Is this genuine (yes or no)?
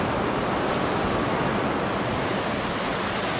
yes